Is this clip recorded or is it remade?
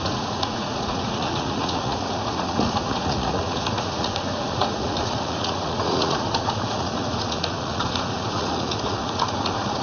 remade